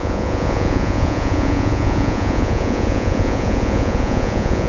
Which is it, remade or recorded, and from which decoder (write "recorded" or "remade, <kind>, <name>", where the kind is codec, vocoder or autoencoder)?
remade, vocoder, Vocos